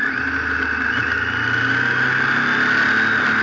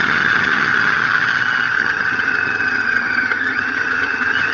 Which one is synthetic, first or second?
second